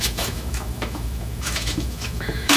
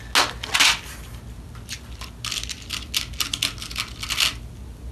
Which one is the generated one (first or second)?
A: first